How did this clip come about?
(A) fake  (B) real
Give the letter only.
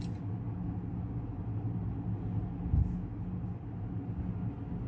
B